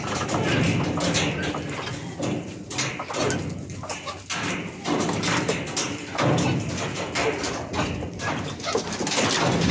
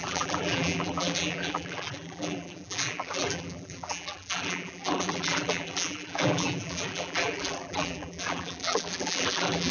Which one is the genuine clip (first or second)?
first